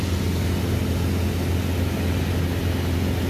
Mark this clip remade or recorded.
recorded